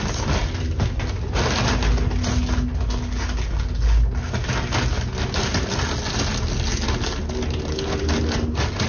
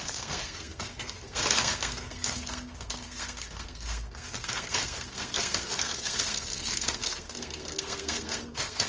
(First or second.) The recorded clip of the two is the first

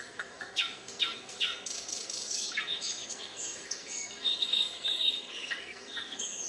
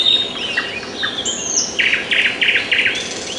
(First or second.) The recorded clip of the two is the second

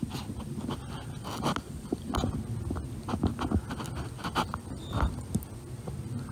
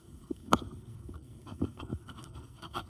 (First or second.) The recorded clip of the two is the first